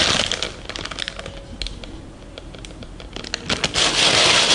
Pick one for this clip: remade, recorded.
recorded